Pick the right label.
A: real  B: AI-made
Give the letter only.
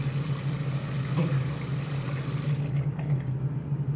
A